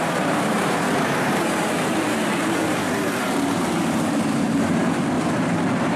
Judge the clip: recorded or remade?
remade